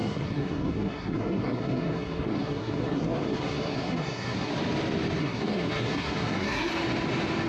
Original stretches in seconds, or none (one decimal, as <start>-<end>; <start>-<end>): 4.5-5.2; 6.7-7.5